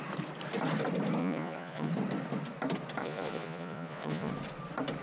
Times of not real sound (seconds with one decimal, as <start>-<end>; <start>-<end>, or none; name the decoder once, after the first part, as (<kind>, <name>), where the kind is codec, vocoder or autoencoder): 1.2-1.9 (vocoder, Vocos); 3.0-4.3